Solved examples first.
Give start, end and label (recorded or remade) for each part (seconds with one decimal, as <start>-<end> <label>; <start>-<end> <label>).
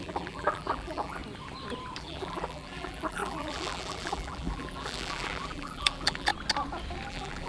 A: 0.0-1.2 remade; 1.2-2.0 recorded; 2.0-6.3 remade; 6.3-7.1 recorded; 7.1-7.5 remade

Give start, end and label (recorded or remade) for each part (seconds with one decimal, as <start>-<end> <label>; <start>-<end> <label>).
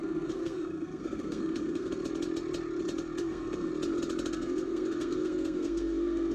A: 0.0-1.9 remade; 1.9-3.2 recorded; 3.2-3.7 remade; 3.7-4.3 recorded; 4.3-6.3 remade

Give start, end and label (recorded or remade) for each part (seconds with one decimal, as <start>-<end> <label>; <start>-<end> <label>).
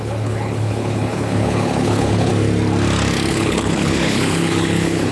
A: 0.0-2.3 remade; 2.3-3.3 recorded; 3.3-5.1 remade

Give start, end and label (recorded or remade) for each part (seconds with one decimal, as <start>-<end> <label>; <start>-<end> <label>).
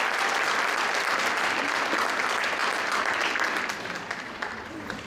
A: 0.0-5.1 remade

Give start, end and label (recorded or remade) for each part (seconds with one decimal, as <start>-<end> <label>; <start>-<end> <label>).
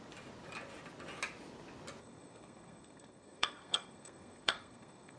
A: 0.0-2.0 recorded; 2.0-5.2 remade